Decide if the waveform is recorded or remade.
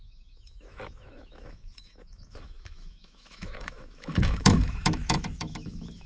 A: remade